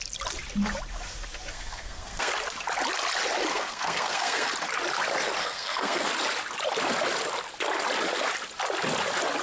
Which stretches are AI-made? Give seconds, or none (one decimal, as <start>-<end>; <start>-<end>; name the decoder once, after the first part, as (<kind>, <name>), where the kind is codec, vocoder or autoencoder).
1.5-2.3 (codec, SNAC); 3.5-4.5; 5.4-6.1